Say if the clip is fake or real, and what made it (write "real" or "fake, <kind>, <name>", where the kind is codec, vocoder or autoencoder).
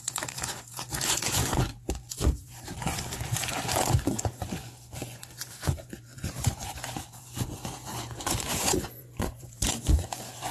fake, vocoder, Vocos